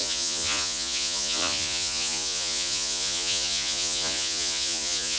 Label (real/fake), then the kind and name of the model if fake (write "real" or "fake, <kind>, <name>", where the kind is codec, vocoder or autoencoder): fake, vocoder, Vocos